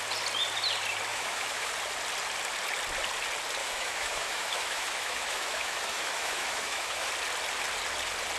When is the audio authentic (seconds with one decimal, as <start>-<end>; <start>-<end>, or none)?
0.0-1.1; 1.7-3.6; 7.1-8.4